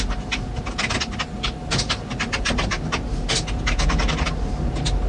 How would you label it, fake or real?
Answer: real